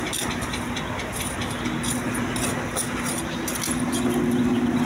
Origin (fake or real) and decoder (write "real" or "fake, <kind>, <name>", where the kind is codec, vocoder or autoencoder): real